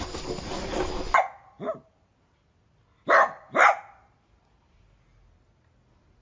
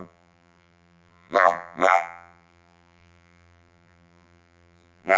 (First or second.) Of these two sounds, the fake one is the second